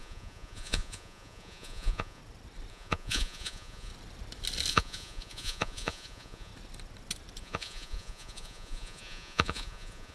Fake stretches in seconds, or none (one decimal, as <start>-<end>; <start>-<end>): 0.0-2.2; 2.7-3.9; 4.7-6.5; 7.4-10.1